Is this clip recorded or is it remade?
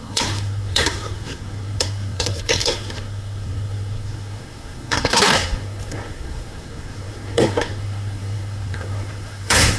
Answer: remade